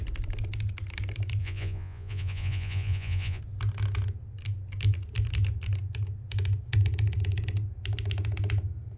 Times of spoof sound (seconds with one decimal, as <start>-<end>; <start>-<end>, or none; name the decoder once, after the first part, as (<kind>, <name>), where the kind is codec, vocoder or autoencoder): 1.4-3.4 (vocoder, Vocos)